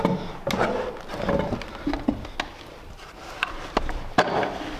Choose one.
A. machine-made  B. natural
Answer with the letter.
B